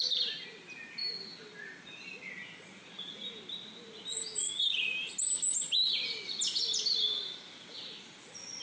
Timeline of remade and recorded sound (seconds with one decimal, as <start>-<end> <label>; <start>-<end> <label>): 0.0-8.6 recorded